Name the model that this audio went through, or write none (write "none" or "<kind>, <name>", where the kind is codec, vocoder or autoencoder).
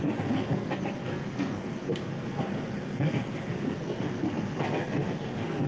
codec, SNAC